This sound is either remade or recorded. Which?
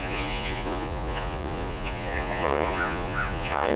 remade